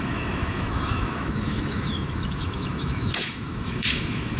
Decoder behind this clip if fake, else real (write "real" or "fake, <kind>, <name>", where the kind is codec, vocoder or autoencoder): fake, autoencoder, DAC-VAE